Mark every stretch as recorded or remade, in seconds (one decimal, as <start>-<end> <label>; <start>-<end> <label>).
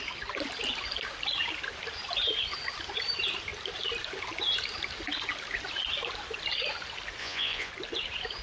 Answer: 0.0-7.2 recorded; 7.2-7.7 remade; 7.7-8.4 recorded